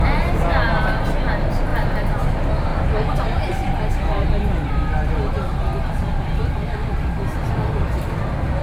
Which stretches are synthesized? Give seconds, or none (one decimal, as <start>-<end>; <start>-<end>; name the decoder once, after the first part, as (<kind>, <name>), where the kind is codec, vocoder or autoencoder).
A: 1.7-2.3 (vocoder, BigVGAN v2)